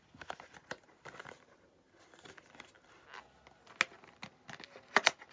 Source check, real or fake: real